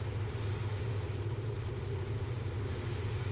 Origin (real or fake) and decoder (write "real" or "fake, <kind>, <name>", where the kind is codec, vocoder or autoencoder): fake, vocoder, BigVGAN v2